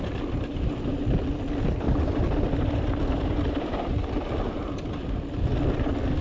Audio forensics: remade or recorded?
recorded